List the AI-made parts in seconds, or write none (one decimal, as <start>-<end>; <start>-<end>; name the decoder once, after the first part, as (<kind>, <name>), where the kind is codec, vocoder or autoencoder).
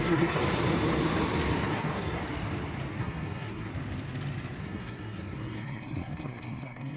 0.0-0.4 (codec, SNAC); 1.7-2.2; 3.0-3.7; 4.6-7.0